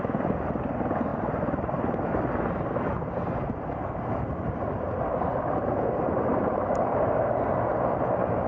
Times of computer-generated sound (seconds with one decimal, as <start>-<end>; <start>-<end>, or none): none